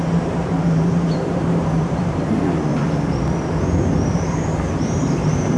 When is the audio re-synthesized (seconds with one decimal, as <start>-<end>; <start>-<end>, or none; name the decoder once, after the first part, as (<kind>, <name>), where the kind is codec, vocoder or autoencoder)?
0.0-2.7 (vocoder, BigVGAN v2); 4.1-5.6